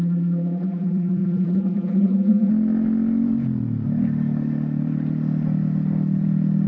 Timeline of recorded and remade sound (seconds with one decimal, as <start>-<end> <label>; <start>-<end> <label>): 0.0-2.5 remade; 2.5-6.7 recorded